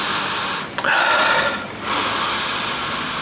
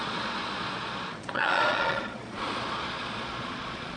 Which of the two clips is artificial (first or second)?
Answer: second